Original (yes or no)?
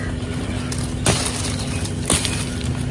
yes